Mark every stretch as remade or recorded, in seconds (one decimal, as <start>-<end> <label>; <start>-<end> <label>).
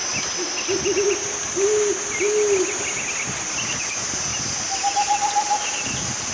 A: 0.0-6.3 recorded